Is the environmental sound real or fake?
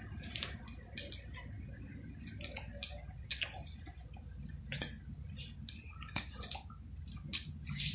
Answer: real